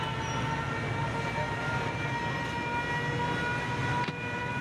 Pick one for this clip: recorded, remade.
recorded